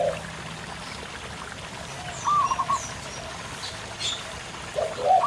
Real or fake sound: real